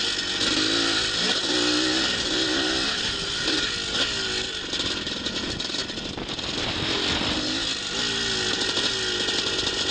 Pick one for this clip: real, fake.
real